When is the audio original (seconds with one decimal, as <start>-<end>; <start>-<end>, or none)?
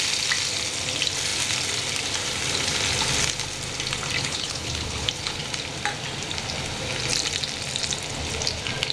0.0-4.2; 5.4-8.9